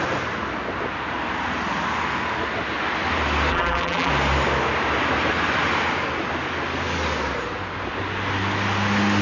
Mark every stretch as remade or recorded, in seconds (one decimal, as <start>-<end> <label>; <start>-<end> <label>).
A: 0.0-3.5 recorded; 3.5-4.1 remade; 4.1-9.2 recorded